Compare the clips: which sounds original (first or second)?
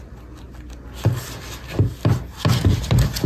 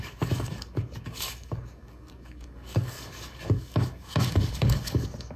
first